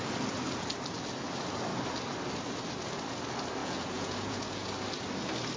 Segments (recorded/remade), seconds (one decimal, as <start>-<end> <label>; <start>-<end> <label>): 0.0-3.6 recorded; 3.6-4.7 remade; 4.7-5.6 recorded